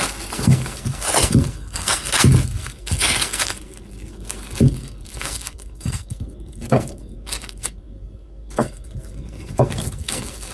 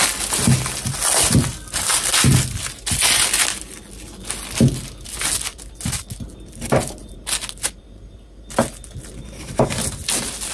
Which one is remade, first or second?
first